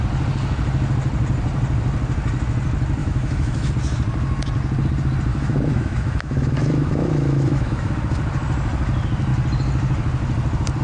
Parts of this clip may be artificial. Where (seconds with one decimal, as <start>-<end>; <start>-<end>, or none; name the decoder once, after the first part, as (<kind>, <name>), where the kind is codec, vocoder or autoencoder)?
3.0-3.7 (autoencoder, DAC-VAE); 5.3-7.9